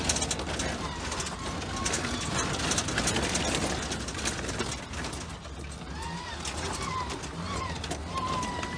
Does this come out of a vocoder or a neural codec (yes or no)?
no